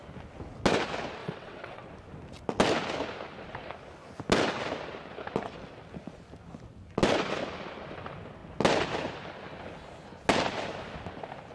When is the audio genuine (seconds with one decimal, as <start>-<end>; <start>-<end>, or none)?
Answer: 0.0-1.2; 1.9-11.5

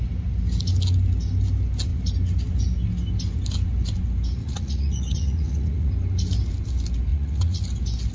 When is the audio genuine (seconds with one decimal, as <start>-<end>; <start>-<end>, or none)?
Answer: 0.0-4.4; 5.9-7.1; 7.6-8.1